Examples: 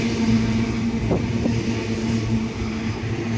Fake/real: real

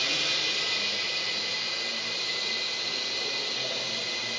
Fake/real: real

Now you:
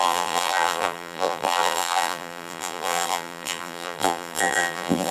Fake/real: fake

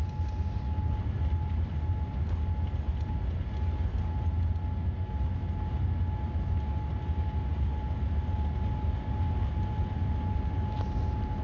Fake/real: real